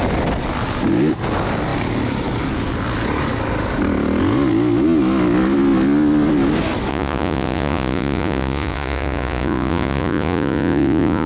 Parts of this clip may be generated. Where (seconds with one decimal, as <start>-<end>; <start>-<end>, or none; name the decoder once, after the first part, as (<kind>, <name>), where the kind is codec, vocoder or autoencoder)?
6.9-11.3 (vocoder, Vocos)